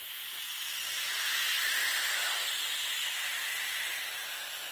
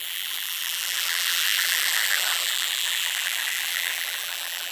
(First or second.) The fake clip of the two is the second